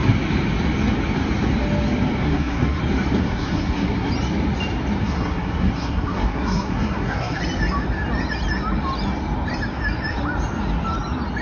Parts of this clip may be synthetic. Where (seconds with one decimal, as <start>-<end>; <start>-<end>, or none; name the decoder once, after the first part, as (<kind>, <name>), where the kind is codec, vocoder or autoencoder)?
2.2-2.8 (codec, SNAC); 3.2-4.1; 5.0-7.4